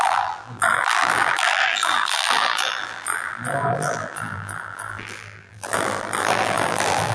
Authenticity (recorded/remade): remade